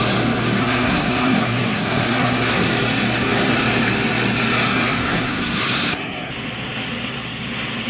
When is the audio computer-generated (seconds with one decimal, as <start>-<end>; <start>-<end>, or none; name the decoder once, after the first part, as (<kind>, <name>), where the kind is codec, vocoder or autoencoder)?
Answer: 0.6-2.7 (codec, SNAC); 5.0-6.3